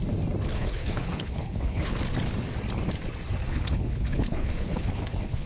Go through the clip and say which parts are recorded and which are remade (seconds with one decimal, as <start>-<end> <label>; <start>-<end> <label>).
0.0-0.5 recorded; 0.5-1.9 remade; 1.9-3.5 recorded; 3.5-5.5 remade